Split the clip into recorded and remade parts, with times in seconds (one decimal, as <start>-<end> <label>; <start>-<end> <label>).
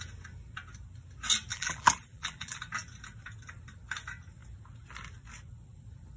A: 0.0-1.5 recorded; 1.5-2.6 remade; 2.6-6.2 recorded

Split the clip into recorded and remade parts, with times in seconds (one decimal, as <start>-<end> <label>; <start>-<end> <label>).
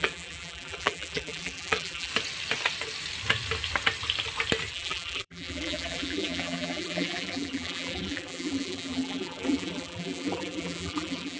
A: 0.0-2.1 remade; 2.1-4.7 recorded; 4.7-11.4 remade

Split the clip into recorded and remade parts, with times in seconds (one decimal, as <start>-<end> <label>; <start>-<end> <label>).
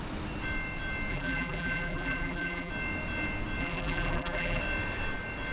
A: 0.0-1.1 recorded; 1.1-2.7 remade; 2.7-3.6 recorded; 3.6-4.6 remade; 4.6-5.5 recorded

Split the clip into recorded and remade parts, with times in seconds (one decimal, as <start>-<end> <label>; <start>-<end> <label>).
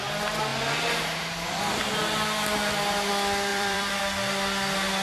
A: 0.0-3.5 recorded; 3.5-4.0 remade; 4.0-5.0 recorded